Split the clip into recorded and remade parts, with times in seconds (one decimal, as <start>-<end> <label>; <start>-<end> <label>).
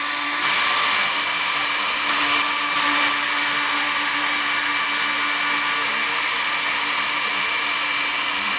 0.0-4.7 remade; 4.7-5.3 recorded; 5.3-8.6 remade